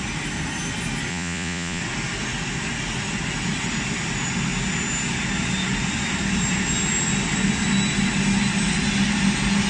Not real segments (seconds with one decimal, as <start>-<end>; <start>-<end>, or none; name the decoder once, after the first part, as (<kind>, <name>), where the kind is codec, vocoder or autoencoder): 1.1-1.8 (vocoder, Vocos)